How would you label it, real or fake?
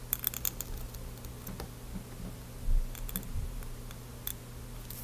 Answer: real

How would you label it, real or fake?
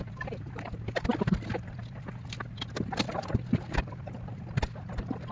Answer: real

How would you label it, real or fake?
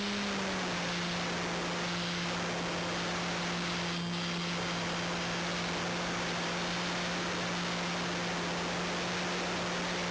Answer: real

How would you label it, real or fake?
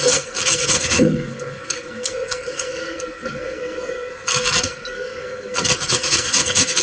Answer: fake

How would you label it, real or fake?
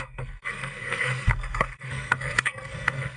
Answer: fake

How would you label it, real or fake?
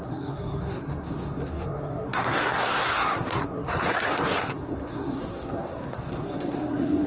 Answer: fake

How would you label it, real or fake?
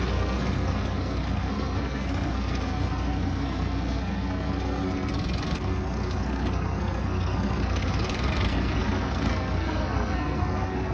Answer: fake